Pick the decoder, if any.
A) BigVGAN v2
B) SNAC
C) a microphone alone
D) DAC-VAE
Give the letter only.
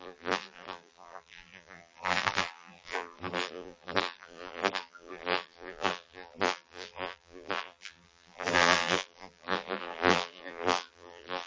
A